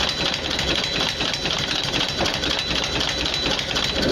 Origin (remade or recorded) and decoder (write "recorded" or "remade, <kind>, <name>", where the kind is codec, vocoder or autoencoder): recorded